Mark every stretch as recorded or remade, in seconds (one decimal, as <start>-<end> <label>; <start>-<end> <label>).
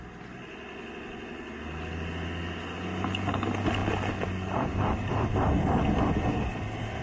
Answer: 0.0-7.0 recorded